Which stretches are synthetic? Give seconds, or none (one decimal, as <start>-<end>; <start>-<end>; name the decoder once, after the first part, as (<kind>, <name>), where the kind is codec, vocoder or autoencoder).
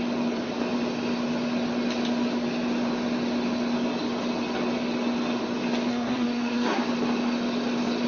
5.9-6.8 (codec, SNAC)